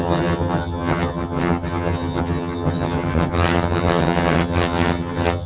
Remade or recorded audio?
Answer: remade